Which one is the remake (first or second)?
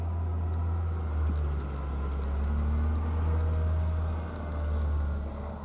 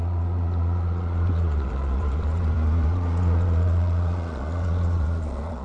second